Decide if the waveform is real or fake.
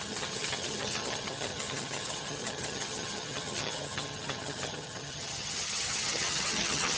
fake